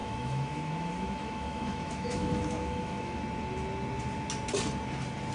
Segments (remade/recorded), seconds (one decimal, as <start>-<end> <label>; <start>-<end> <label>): 0.0-3.2 remade; 3.2-5.3 recorded